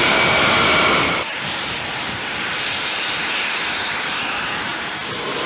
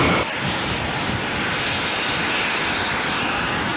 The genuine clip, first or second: second